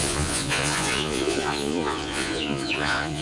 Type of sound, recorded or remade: remade